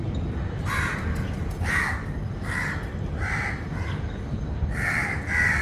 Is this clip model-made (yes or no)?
no